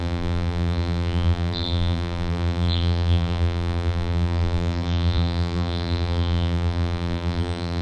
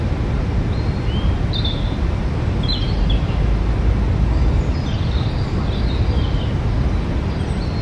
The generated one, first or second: first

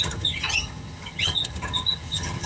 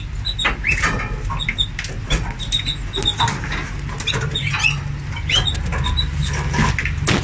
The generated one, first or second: first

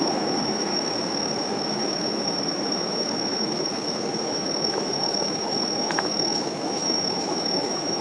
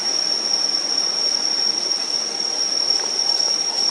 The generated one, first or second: first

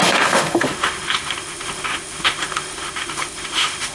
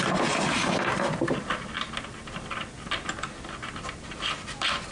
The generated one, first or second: first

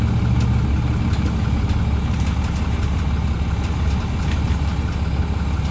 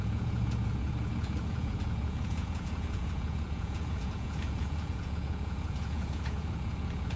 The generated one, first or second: second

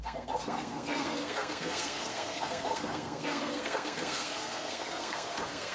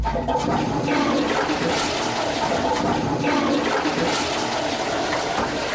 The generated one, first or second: first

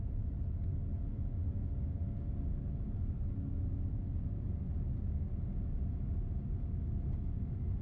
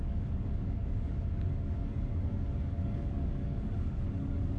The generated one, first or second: second